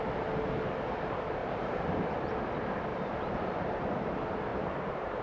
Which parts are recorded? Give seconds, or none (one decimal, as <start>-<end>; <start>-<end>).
0.0-1.4; 2.1-2.9; 3.8-4.5